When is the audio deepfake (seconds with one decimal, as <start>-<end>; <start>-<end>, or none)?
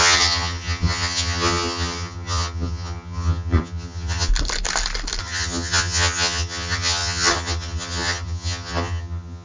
0.0-4.3; 5.2-9.4